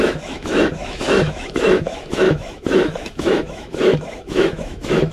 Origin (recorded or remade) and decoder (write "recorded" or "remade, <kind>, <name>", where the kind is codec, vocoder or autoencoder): remade, autoencoder, DAC-VAE